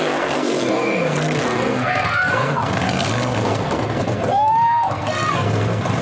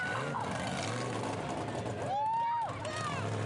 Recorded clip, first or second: second